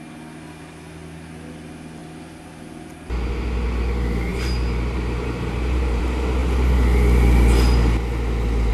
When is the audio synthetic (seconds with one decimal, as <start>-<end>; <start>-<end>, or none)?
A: 4.3-6.0